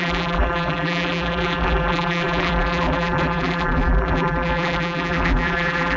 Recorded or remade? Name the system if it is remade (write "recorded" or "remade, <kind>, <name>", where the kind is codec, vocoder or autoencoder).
remade, vocoder, BigVGAN v2